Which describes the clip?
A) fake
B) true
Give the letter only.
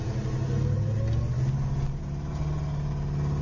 B